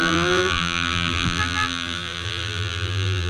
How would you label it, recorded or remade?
remade